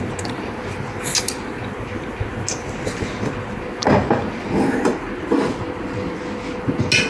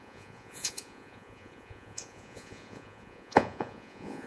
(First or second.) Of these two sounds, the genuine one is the first